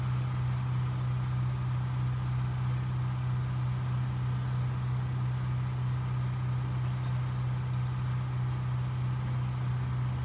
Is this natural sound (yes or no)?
yes